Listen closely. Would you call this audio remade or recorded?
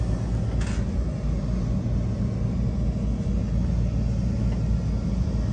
recorded